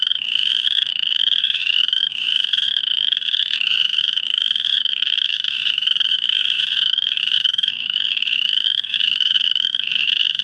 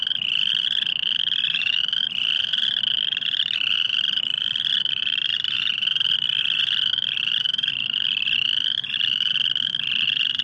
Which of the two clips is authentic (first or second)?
second